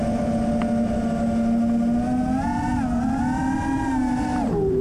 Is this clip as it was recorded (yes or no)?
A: yes